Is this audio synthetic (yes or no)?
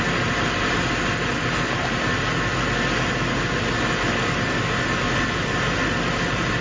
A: no